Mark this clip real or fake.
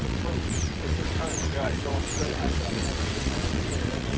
fake